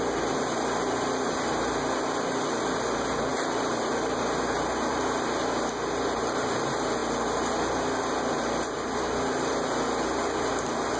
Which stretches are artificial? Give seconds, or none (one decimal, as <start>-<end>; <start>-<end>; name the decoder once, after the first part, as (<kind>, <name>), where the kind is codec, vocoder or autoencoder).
none